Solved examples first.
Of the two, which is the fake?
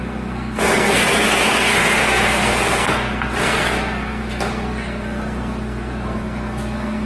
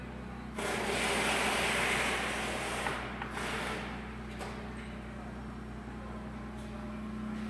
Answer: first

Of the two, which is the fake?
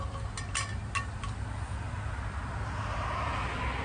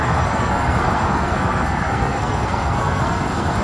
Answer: second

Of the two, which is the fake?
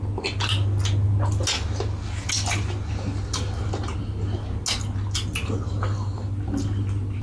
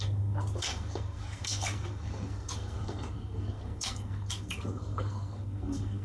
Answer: second